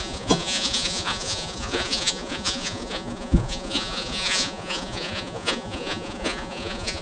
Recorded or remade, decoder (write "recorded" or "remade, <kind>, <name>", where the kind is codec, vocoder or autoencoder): remade, vocoder, Vocos